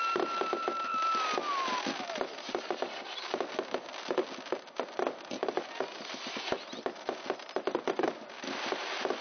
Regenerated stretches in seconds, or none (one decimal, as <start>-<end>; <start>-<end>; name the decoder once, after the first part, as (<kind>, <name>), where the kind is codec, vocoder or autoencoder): none